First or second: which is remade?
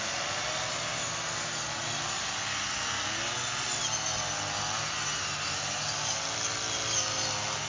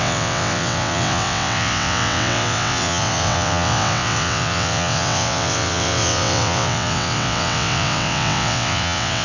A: second